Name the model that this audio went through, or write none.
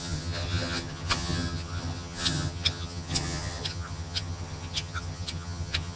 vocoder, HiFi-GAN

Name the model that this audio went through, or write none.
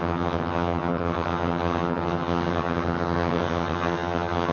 vocoder, HiFi-GAN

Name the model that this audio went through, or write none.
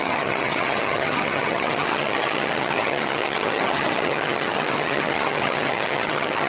vocoder, HiFi-GAN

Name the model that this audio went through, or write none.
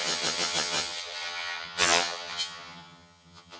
vocoder, HiFi-GAN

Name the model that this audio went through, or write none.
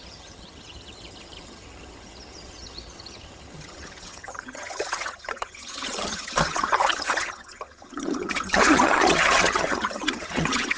vocoder, HiFi-GAN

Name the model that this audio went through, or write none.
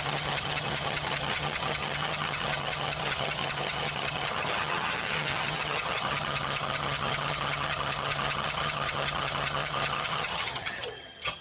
vocoder, HiFi-GAN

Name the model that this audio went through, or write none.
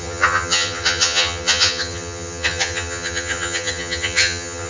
vocoder, HiFi-GAN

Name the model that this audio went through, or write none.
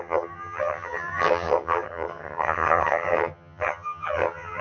vocoder, HiFi-GAN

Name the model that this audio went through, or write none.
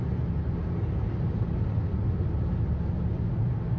none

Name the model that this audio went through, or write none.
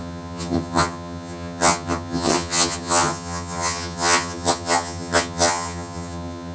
vocoder, HiFi-GAN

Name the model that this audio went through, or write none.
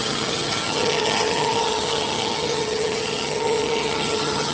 vocoder, HiFi-GAN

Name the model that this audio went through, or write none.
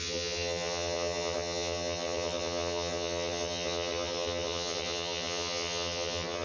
vocoder, HiFi-GAN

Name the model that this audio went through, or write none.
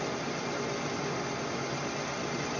none